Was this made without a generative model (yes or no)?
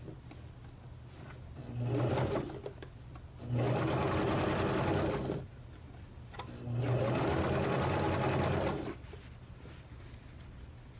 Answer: yes